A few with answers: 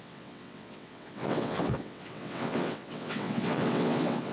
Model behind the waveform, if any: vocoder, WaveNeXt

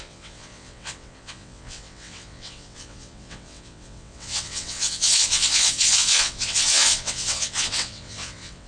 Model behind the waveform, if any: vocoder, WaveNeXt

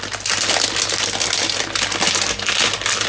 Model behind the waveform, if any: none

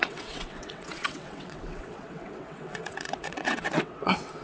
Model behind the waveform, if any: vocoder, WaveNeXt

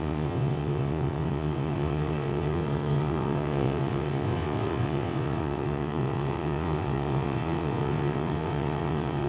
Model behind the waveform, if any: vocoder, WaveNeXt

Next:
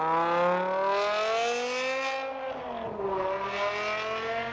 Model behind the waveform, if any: none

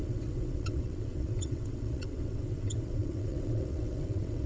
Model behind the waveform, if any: vocoder, WaveNeXt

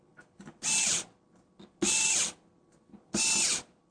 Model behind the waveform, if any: none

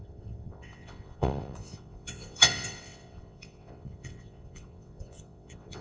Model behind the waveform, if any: vocoder, WaveNeXt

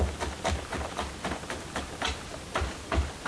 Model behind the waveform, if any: none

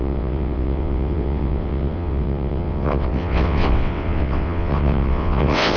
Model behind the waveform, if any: vocoder, WaveNeXt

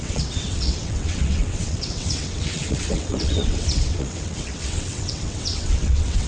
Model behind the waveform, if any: vocoder, WaveNeXt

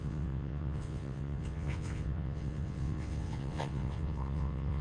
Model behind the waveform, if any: vocoder, WaveNeXt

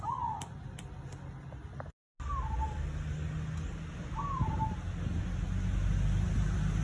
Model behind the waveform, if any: none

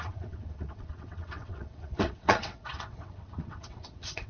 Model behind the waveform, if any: vocoder, WaveNeXt